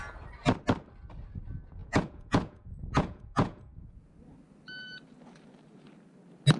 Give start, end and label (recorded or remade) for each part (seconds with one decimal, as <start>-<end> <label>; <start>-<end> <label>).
0.0-1.8 recorded; 1.8-4.1 remade; 4.1-6.6 recorded